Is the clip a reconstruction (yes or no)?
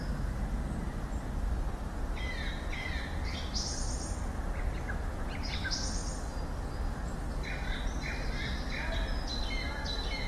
no